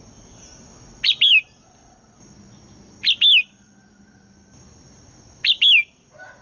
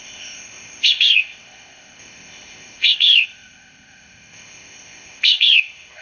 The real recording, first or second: first